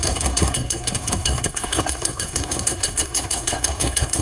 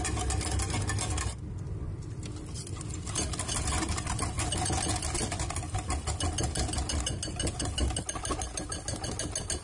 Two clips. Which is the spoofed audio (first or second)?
first